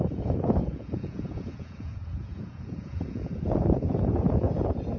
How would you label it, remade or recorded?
remade